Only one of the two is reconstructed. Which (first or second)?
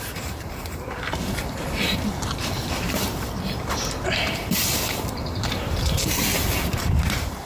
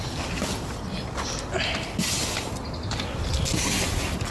first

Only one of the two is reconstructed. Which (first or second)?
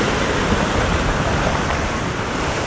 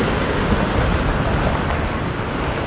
first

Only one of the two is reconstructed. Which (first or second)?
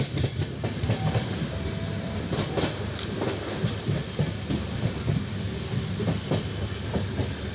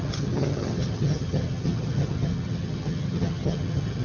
second